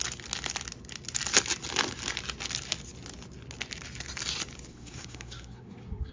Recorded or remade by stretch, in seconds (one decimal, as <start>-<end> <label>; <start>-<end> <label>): 0.0-4.7 recorded; 4.7-6.1 remade